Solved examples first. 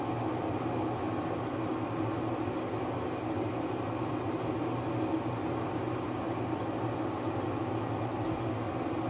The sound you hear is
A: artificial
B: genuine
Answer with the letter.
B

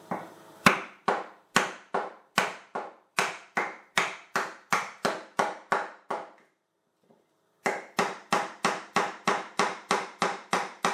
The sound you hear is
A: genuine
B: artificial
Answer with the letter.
B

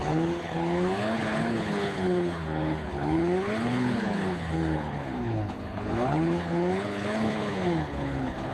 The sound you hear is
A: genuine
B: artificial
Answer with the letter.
B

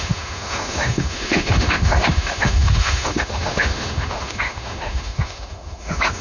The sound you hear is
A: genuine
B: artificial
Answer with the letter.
B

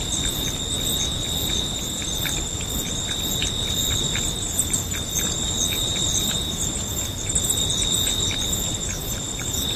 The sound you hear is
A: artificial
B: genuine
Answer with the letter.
B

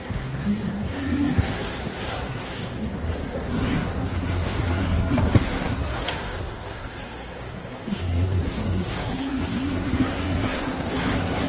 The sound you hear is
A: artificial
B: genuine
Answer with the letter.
A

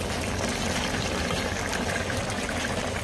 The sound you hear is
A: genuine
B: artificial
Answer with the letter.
A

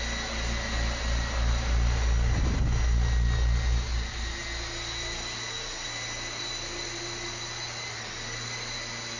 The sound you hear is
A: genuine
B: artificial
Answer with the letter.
A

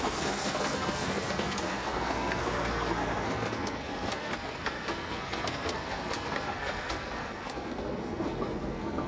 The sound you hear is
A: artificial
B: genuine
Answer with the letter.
A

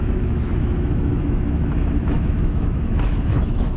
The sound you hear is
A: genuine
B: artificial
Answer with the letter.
B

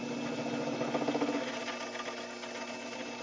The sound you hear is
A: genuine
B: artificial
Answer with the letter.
A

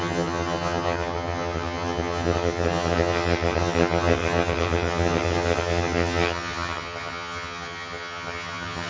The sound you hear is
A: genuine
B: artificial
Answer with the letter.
B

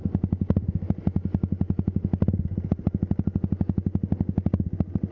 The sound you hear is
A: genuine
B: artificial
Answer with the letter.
A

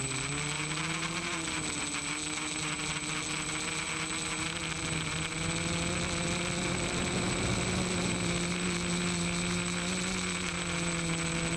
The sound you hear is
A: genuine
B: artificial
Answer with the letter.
A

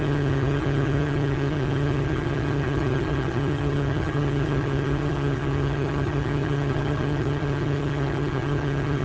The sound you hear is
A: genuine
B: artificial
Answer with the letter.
B